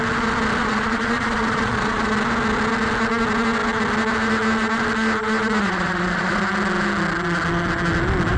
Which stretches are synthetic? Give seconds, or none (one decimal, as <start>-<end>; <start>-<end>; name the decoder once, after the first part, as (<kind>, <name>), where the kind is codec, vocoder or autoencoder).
0.6-2.1 (vocoder, Vocos); 5.6-6.4